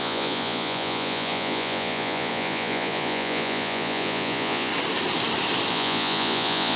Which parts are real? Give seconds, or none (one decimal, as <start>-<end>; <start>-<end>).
4.7-5.7